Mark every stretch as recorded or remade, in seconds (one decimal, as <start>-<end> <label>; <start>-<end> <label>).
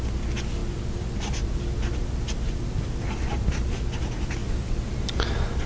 0.0-5.7 recorded